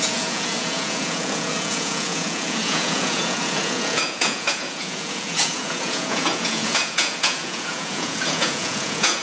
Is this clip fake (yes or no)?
yes